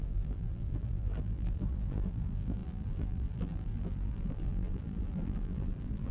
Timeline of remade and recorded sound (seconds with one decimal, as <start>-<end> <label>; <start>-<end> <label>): 0.0-6.1 remade